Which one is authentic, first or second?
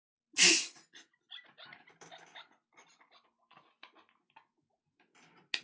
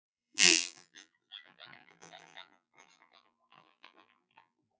first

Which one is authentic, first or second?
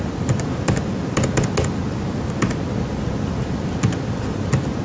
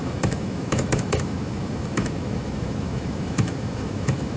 first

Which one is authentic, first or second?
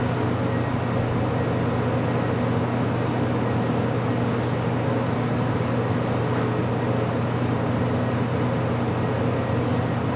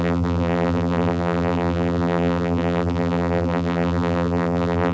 first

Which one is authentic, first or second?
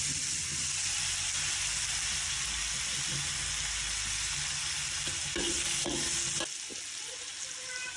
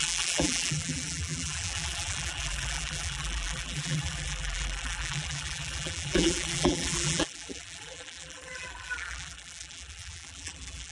first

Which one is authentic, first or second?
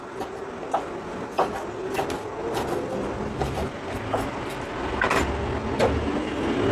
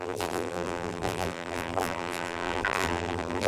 first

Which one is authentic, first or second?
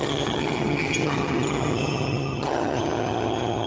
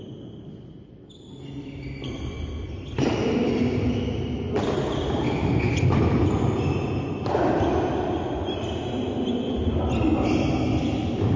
second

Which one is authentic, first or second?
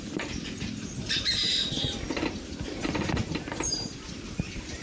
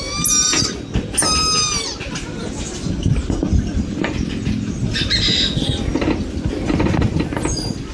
second